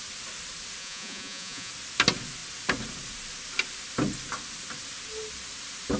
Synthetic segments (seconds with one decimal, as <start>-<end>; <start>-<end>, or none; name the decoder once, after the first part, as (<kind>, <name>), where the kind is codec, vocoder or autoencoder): 0.8-1.7 (vocoder, Vocos)